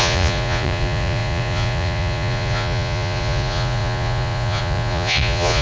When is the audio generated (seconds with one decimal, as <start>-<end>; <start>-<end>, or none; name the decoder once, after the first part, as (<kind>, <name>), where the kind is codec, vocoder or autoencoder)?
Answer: 0.0-5.6 (vocoder, Vocos)

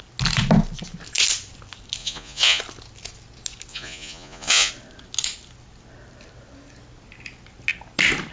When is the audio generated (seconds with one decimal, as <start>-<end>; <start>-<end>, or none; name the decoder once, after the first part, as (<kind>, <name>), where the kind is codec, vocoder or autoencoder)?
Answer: 2.0-2.6 (vocoder, Vocos); 3.7-4.7

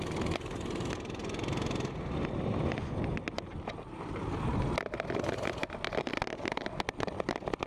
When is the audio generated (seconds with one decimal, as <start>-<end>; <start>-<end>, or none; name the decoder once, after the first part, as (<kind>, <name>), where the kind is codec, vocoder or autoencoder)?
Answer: none